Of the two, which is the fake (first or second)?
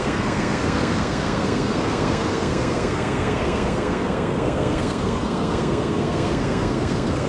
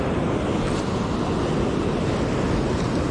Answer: first